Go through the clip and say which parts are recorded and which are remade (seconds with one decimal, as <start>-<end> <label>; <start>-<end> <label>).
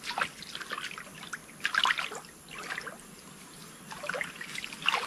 0.0-5.1 recorded